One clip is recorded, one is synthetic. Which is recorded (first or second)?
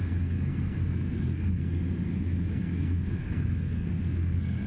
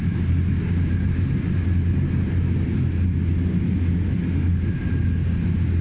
second